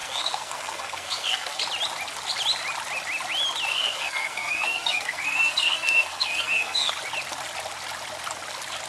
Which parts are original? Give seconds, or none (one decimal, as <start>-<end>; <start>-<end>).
1.6-3.7; 6.9-8.9